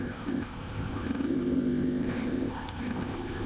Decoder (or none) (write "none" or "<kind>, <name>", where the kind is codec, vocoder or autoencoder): codec, ZipCodec